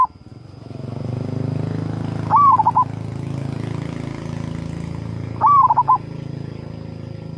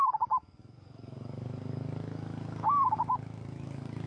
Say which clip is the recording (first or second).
first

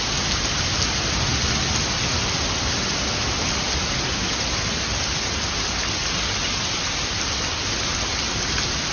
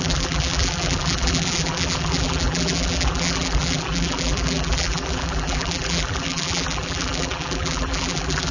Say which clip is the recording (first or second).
first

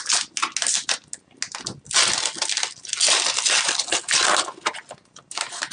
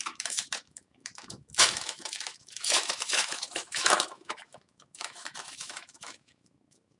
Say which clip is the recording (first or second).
first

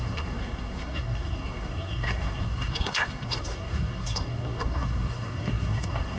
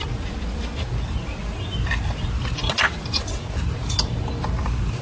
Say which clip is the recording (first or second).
second